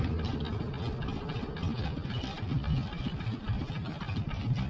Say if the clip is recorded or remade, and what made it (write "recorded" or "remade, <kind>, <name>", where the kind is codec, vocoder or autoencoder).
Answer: recorded